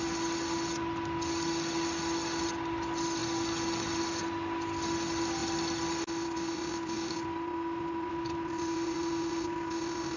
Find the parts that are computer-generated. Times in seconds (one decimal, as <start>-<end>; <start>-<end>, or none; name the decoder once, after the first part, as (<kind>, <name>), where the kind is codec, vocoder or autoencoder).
none